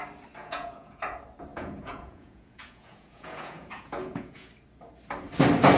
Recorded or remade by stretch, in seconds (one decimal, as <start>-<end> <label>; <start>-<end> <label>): 0.0-0.4 recorded; 0.4-1.0 remade; 1.0-1.5 recorded; 1.5-4.5 remade; 4.5-5.8 recorded